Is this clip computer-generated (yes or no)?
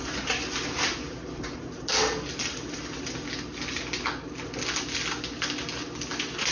no